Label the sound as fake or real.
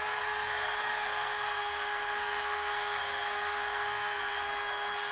fake